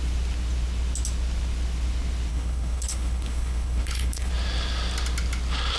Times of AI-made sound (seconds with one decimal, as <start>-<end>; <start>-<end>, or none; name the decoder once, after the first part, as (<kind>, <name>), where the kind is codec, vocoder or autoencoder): 2.3-4.3 (codec, HILCodec)